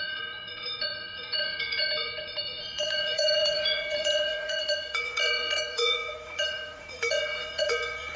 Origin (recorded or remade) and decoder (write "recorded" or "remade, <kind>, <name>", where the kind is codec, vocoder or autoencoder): remade, vocoder, Vocos